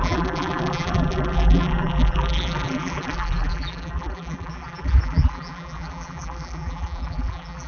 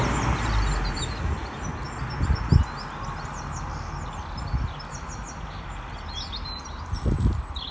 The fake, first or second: first